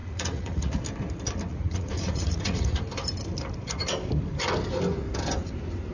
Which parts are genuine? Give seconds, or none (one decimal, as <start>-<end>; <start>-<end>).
0.7-1.5; 2.8-5.9

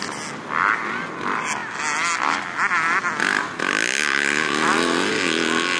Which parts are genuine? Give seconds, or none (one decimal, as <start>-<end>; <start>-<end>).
0.0-5.8

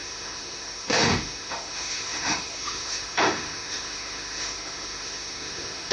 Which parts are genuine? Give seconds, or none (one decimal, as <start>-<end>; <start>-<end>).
none

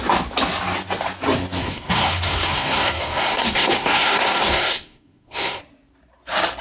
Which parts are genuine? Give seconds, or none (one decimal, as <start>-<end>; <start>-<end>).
0.0-1.6; 5.6-6.6

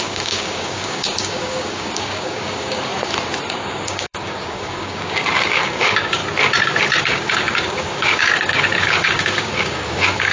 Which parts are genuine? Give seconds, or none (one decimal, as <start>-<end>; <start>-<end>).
2.9-3.5; 6.2-7.0

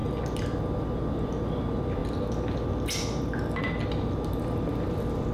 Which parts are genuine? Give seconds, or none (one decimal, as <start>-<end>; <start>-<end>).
0.0-5.3

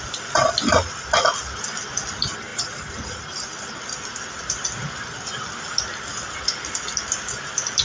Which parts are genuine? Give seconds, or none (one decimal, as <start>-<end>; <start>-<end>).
0.0-7.8

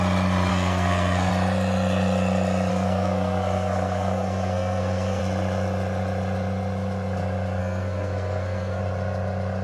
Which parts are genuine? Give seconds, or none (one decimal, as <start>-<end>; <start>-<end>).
0.0-0.5; 1.3-2.7; 5.2-7.6; 8.8-9.6